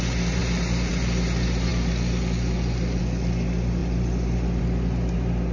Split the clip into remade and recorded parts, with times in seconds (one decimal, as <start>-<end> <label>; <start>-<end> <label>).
0.0-5.5 recorded